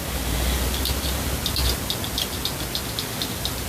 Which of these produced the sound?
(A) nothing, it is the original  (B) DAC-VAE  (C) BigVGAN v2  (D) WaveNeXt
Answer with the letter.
A